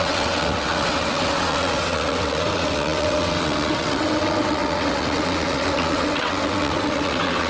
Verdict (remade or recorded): remade